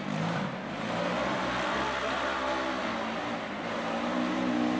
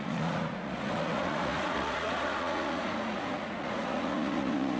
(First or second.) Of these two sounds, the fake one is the second